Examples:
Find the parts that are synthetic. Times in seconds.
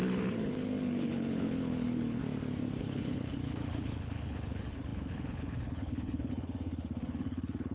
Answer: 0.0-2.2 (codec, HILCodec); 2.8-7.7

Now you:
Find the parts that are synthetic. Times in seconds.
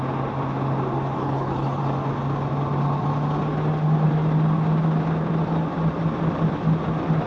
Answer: 1.2-1.8 (codec, HILCodec)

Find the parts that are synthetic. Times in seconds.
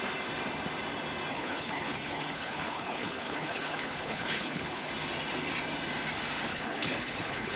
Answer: 1.3-4.9 (codec, HILCodec); 6.5-7.6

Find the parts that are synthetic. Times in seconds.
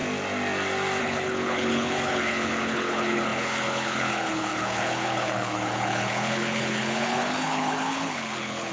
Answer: 1.0-8.7 (codec, HILCodec)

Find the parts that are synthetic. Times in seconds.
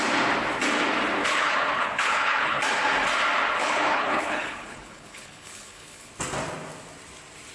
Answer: 1.2-2.6 (codec, HILCodec); 3.6-6.1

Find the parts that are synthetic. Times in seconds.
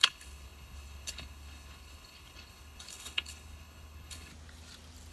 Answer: 0.0-4.3 (codec, HILCodec)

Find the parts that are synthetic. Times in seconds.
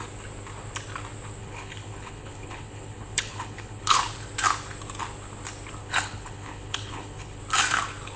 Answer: 1.4-4.0 (codec, HILCodec); 5.8-7.4